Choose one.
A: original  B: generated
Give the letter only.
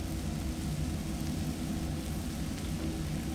A